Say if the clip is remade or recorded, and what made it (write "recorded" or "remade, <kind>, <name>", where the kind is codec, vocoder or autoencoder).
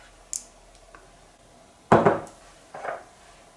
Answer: recorded